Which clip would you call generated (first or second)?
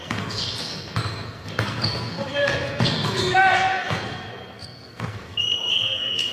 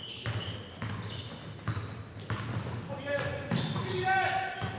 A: first